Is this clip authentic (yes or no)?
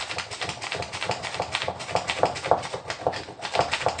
no